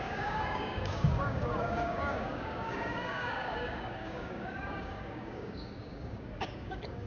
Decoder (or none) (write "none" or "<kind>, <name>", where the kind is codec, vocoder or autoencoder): codec, DAC